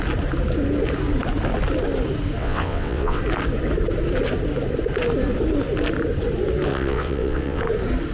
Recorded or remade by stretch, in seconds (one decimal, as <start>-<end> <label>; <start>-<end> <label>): 0.0-2.4 recorded; 2.4-3.2 remade; 3.2-6.7 recorded; 6.7-7.6 remade; 7.6-8.1 recorded